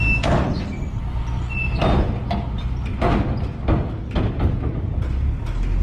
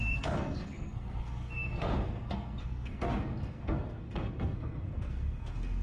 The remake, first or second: second